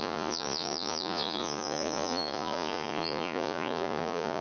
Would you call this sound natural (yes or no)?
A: no